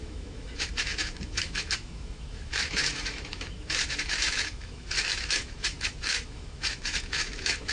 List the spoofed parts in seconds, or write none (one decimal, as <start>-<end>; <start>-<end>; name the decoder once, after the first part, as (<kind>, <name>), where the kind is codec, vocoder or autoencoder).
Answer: 0.0-7.7 (autoencoder, DAC-VAE)

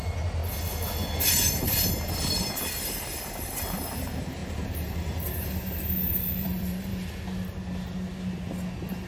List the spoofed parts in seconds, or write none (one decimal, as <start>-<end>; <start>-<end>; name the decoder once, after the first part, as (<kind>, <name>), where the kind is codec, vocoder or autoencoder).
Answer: 0.0-0.4 (vocoder, BigVGAN v2); 1.2-6.9

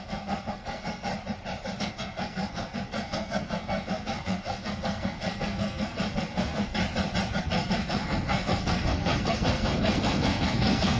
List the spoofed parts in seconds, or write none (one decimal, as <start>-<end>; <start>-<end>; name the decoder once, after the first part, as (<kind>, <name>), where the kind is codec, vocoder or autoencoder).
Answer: 0.0-1.1 (codec, SNAC); 1.8-6.8; 7.4-11.0

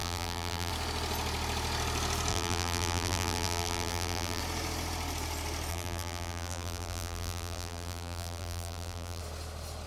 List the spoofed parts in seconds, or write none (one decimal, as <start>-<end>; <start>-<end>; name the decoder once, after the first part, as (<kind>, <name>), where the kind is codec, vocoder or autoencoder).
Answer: 0.0-0.7 (vocoder, BigVGAN v2); 2.3-4.4; 5.7-9.2

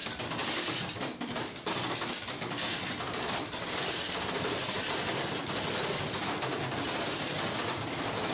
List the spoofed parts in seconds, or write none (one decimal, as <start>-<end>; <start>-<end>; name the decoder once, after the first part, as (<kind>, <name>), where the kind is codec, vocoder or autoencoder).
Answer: none

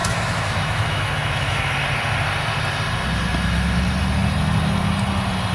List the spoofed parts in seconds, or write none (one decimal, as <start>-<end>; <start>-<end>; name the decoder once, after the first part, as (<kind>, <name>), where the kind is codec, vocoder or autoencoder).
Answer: 0.0-1.6 (autoencoder, DAC-VAE)

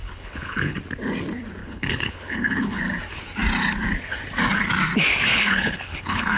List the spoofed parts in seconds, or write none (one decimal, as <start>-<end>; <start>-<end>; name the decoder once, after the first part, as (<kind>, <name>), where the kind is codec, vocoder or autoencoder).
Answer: 0.0-0.8 (codec, HILCodec); 1.6-2.8; 5.3-6.4

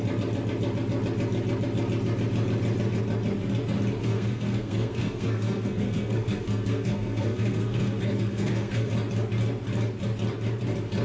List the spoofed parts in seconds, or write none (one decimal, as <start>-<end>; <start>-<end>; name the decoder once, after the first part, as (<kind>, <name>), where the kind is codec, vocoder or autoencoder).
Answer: 4.0-8.9 (codec, SNAC)